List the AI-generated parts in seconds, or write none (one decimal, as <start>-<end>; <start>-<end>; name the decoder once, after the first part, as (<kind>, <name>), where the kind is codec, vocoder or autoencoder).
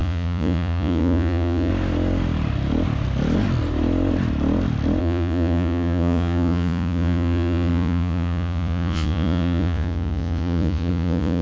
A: 0.0-1.7 (vocoder, Vocos); 5.0-11.4